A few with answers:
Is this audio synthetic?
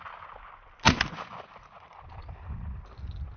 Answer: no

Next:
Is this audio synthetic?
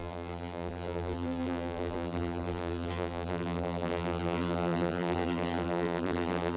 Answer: yes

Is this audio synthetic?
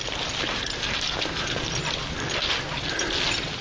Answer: no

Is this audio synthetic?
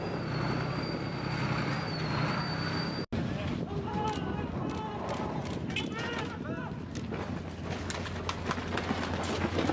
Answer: no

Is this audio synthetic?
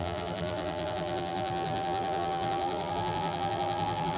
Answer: yes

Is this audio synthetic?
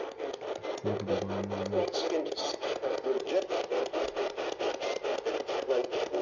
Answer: no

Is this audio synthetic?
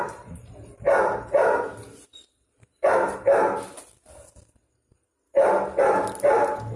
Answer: no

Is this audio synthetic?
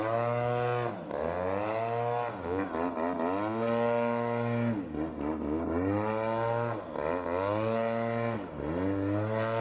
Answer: no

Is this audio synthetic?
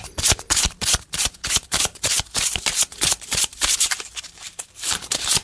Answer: yes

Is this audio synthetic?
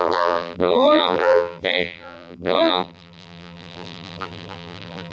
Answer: yes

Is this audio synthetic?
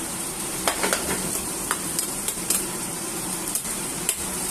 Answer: yes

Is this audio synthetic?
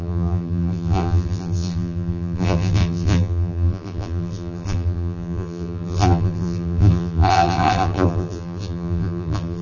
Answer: yes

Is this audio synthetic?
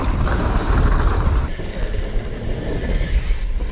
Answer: no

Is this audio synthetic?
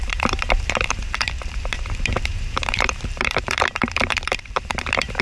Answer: yes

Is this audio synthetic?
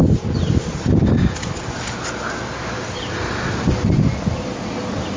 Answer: no